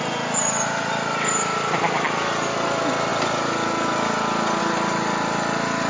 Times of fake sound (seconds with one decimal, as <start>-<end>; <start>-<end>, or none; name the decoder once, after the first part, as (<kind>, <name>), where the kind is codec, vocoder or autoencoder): none